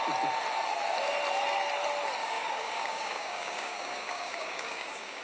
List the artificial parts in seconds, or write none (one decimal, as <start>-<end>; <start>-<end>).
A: 2.2-5.2